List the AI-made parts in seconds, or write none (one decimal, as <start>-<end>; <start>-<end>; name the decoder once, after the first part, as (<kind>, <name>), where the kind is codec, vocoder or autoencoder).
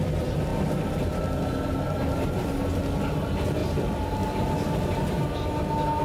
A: none